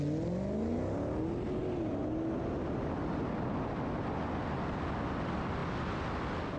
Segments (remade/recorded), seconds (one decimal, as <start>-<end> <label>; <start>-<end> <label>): 0.0-6.6 recorded